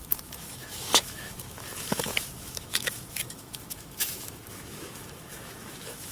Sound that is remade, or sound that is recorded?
remade